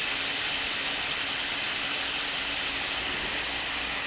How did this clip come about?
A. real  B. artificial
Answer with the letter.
A